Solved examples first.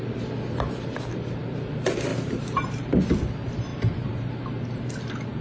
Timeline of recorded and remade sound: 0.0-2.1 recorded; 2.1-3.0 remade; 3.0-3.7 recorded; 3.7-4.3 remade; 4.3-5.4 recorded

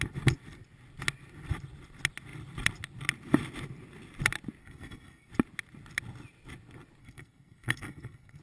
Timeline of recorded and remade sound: 0.0-4.6 recorded; 4.6-5.3 remade; 5.3-7.0 recorded; 7.0-8.4 remade

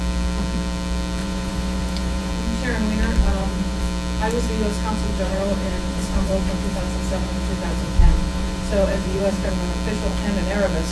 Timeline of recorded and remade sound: 0.0-1.2 recorded; 1.2-2.3 remade; 2.3-3.3 recorded; 3.3-3.8 remade; 3.8-5.1 recorded; 5.1-9.5 remade; 9.5-10.9 recorded

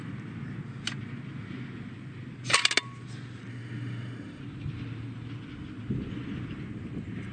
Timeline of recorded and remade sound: 0.0-3.5 recorded; 3.5-4.4 remade; 4.4-7.3 recorded

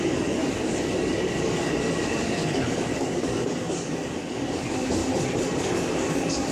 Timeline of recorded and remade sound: 0.0-5.0 remade; 5.0-5.6 recorded; 5.6-6.5 remade